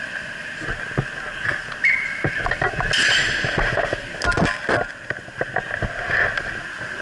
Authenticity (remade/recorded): recorded